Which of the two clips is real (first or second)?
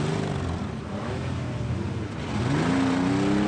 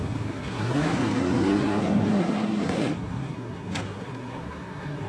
first